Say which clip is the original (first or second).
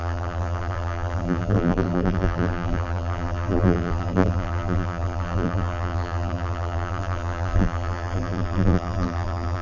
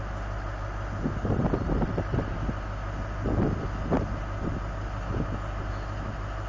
second